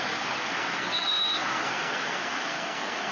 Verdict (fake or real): fake